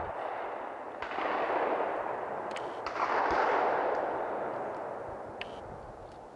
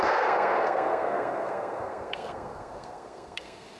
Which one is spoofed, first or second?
second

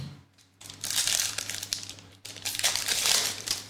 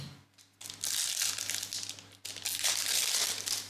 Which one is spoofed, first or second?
first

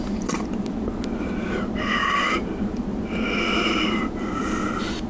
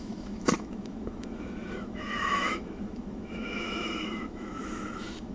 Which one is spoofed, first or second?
second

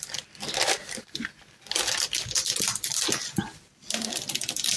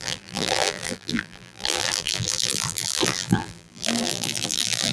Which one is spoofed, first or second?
second